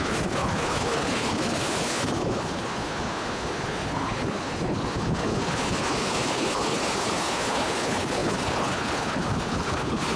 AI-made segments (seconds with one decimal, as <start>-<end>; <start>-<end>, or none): 0.0-10.2